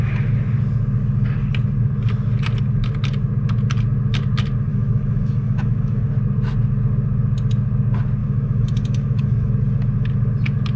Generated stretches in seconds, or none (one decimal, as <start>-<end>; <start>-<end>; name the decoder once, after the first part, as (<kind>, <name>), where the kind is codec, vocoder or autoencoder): 4.7-6.0 (autoencoder, DAC-VAE); 8.2-9.5